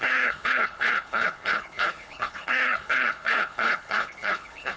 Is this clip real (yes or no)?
no